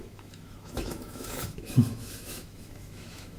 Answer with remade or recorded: remade